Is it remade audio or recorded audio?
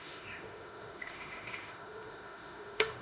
remade